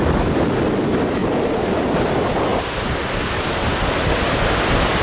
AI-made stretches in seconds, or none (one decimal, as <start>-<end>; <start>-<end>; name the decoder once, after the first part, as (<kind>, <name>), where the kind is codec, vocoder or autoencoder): 1.2-2.1 (vocoder, BigVGAN v2); 2.5-3.0